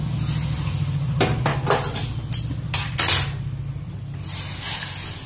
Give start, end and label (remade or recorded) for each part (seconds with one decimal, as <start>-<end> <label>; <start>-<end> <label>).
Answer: 0.0-5.3 recorded